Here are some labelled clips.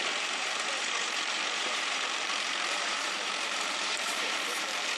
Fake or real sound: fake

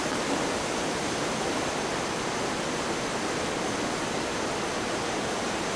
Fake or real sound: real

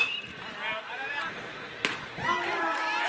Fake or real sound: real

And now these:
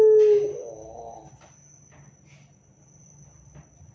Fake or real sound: real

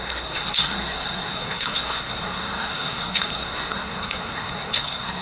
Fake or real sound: fake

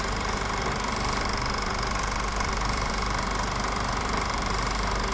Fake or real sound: fake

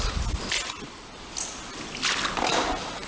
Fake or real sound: real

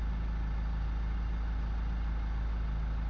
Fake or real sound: real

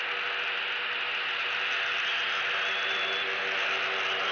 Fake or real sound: real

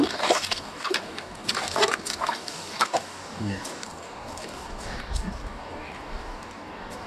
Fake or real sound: fake